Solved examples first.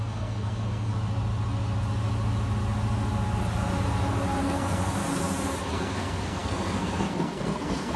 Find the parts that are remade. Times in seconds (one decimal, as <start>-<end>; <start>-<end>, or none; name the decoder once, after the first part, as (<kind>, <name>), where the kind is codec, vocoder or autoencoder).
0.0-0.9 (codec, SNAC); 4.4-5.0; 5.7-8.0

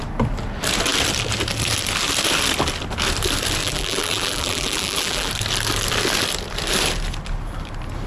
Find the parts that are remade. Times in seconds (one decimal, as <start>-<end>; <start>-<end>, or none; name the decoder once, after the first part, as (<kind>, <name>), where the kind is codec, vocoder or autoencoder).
3.6-5.3 (vocoder, BigVGAN v2)

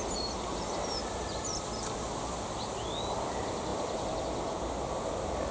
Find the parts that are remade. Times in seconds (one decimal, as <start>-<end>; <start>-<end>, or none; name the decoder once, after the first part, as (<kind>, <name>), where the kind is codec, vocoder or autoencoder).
1.0-2.0 (vocoder, BigVGAN v2); 3.7-4.2

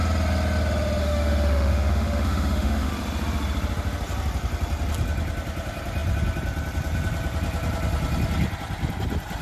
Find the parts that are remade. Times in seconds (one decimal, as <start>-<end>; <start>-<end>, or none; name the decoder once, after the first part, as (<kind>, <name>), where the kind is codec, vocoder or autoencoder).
1.0-2.9 (autoencoder, DAC-VAE)

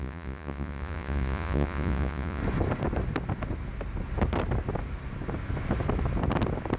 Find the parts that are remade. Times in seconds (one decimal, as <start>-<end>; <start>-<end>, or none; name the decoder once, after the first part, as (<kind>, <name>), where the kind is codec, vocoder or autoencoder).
0.0-2.4 (vocoder, Vocos)

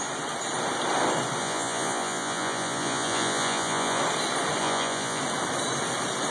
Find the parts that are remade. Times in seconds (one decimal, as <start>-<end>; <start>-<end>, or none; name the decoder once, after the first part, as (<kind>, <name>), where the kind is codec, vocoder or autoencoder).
1.4-4.0 (vocoder, Vocos); 4.6-5.2